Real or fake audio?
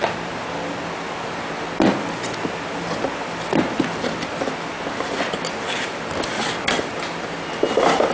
real